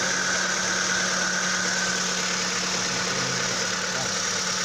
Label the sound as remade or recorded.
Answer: recorded